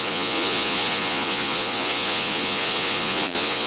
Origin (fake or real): fake